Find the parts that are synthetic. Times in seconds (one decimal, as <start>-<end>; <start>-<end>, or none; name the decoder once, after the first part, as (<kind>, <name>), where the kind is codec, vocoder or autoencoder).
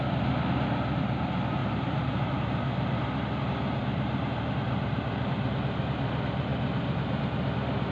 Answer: 1.6-2.3 (vocoder, BigVGAN v2); 3.9-5.4; 6.5-7.2